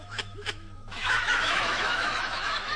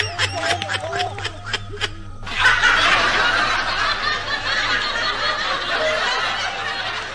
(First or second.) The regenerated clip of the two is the first